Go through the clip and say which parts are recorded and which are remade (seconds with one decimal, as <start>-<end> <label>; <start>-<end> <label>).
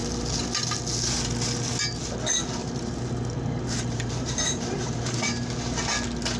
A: 0.0-2.6 recorded; 2.6-5.8 remade; 5.8-6.4 recorded